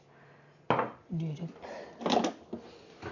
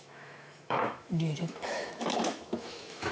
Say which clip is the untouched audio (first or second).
first